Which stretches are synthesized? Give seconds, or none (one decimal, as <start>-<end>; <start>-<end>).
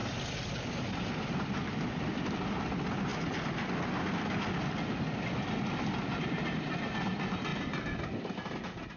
none